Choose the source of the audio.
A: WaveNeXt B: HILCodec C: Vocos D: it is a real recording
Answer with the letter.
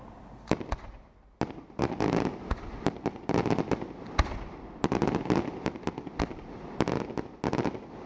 D